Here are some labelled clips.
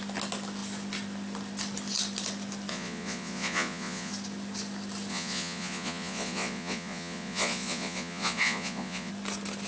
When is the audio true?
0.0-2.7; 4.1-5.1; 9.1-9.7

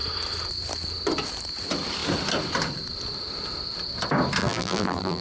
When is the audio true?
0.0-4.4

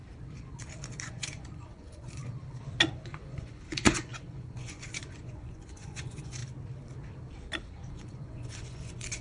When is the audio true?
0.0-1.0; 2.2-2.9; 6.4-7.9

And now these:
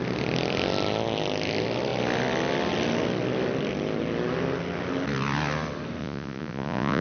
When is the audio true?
0.0-6.0

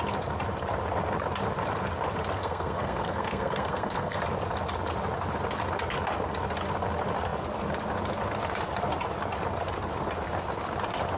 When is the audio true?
0.0-2.4; 4.2-11.2

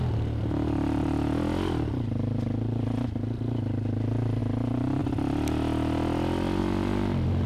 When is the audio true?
0.0-7.5